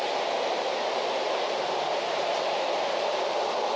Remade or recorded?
remade